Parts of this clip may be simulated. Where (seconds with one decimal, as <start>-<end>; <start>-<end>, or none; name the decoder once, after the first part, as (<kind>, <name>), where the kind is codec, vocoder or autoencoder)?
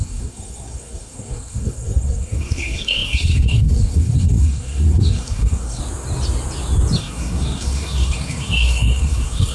0.0-5.8 (codec, SNAC); 7.0-9.5